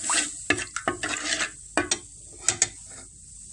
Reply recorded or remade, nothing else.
recorded